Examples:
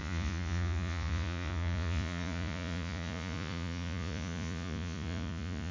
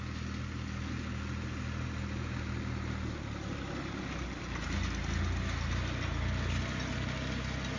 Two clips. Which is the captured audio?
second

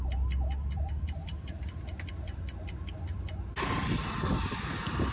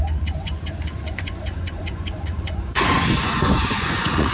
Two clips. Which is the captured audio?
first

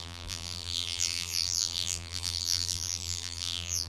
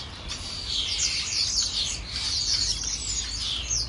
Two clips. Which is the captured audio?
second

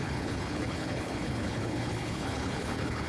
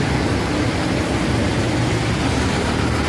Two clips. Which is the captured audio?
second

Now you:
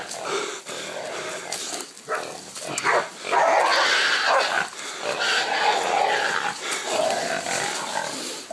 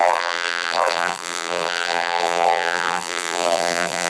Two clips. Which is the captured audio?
first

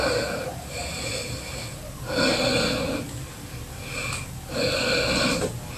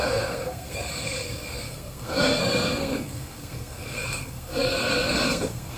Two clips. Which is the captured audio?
first